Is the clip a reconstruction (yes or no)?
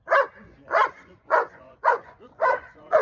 yes